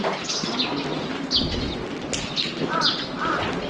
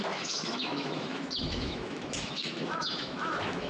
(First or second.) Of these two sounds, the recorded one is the first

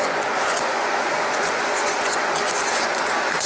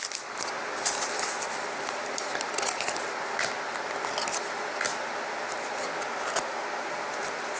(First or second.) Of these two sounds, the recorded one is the second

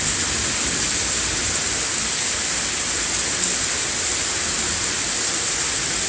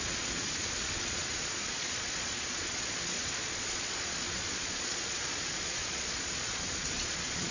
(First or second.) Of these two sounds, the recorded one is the first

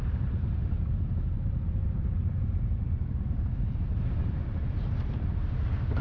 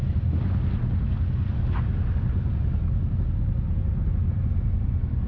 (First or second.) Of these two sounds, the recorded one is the second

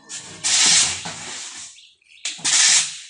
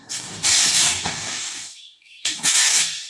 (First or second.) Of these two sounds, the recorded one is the first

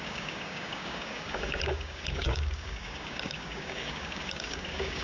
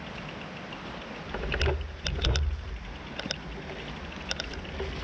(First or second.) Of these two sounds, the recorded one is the second